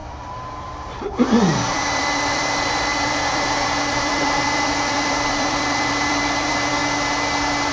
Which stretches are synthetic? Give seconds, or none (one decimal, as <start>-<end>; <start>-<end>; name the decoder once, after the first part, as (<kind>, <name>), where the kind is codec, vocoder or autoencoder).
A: 0.0-6.8 (vocoder, BigVGAN v2)